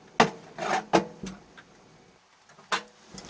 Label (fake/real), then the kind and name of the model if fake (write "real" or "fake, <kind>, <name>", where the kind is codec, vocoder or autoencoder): real